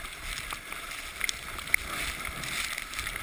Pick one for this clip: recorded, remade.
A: recorded